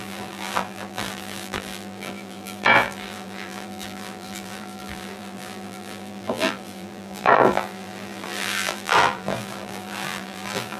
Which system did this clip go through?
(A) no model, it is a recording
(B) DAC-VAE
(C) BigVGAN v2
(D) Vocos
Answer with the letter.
C